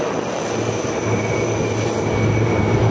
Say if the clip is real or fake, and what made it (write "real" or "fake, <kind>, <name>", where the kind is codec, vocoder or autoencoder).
real